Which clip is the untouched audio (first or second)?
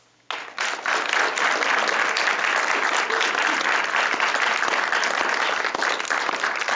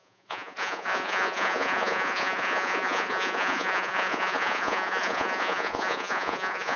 first